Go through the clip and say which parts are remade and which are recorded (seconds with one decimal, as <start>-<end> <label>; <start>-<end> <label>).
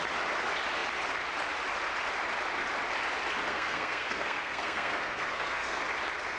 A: 0.0-3.5 recorded; 3.5-5.8 remade; 5.8-6.4 recorded